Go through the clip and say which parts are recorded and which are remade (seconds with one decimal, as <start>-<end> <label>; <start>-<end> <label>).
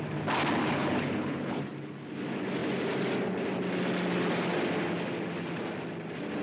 0.0-0.6 recorded; 0.6-1.6 remade; 1.6-6.4 recorded